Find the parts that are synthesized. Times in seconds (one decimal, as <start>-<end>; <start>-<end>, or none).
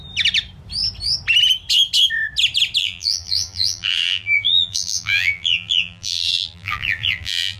2.8-7.6